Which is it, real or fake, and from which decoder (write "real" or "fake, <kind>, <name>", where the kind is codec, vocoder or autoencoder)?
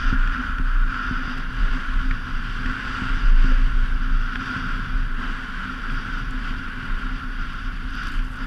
real